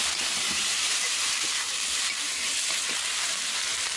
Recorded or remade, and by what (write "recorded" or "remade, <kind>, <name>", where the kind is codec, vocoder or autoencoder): remade, vocoder, BigVGAN v2